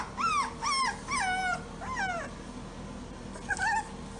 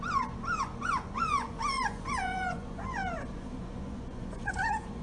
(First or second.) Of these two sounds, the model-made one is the second